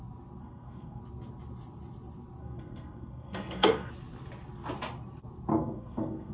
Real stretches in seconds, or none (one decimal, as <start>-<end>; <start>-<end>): 0.0-0.4; 1.0-2.4; 3.9-5.5

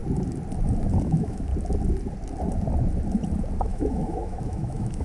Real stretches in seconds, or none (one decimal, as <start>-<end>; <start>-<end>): 0.0-1.0; 1.5-3.6

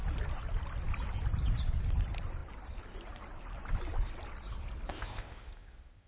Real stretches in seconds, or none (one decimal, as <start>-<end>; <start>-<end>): 0.0-4.9

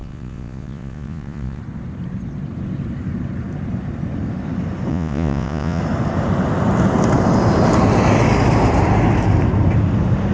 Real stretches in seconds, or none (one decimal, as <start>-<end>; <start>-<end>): 1.6-4.9; 5.8-10.3

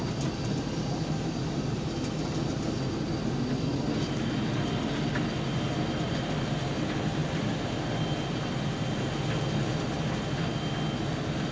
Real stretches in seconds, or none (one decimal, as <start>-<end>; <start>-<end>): 0.0-11.5

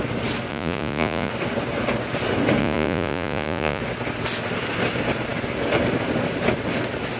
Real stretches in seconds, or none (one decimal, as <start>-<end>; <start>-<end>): 0.0-0.5; 1.3-2.6; 3.8-7.2